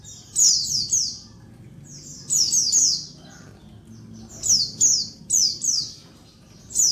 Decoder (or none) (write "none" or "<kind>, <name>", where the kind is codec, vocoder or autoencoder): none